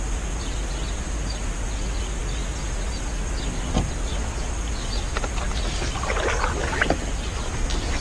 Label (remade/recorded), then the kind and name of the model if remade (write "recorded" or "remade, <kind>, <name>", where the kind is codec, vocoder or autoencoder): recorded